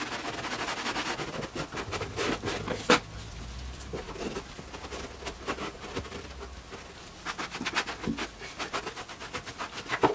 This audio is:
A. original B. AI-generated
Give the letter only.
A